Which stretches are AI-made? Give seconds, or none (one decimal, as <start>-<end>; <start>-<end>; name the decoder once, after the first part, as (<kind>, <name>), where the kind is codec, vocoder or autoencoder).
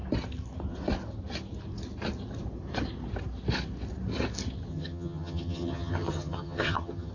4.7-7.1 (vocoder, HiFi-GAN)